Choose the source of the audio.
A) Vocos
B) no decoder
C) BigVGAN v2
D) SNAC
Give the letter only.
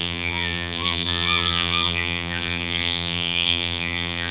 C